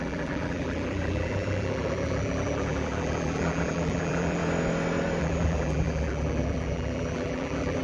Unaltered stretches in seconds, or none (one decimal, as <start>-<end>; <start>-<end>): 4.4-5.2